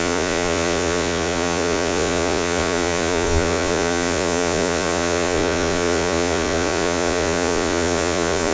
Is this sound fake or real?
fake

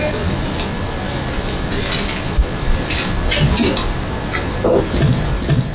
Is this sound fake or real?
real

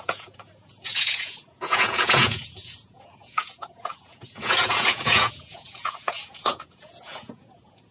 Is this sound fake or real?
fake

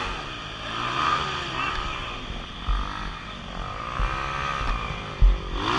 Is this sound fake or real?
real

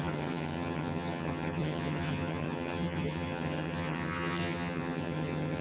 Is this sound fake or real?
fake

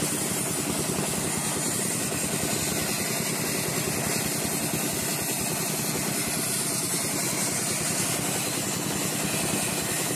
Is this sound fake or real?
real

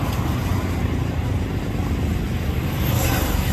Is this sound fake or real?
real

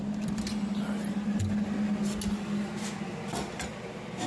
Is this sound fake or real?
real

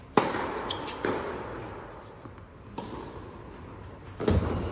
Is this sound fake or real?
real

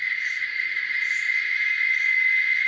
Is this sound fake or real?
real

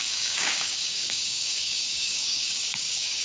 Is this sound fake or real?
fake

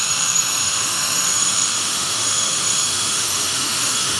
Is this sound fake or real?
fake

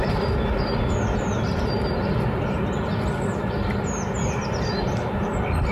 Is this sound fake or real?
real